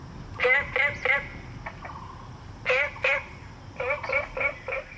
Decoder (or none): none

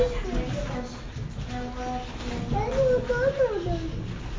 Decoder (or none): none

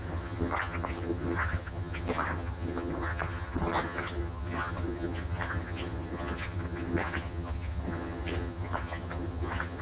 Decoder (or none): vocoder, HiFi-GAN